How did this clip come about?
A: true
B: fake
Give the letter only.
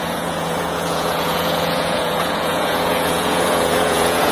B